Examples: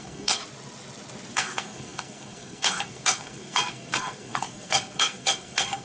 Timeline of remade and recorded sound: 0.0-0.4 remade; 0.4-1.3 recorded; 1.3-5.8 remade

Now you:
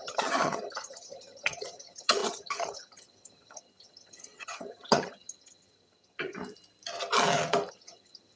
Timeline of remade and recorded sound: 0.0-6.4 remade; 6.4-7.7 recorded; 7.7-8.4 remade

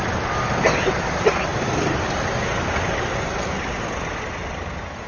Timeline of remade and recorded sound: 0.0-5.1 recorded

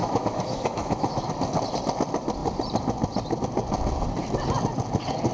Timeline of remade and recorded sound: 0.0-1.3 remade; 1.3-5.3 recorded